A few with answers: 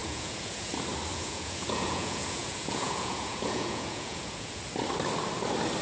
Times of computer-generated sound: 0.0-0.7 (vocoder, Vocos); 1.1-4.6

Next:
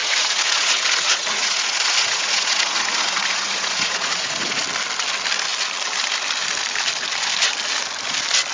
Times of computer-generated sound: 0.0-4.6 (vocoder, Vocos)

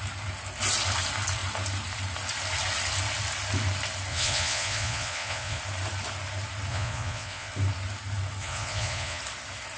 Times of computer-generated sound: 4.1-5.6 (vocoder, Vocos); 6.7-7.5; 8.4-9.2